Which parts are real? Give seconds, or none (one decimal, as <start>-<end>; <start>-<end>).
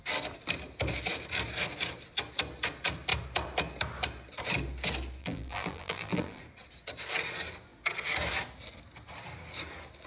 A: 0.0-5.2; 6.4-10.1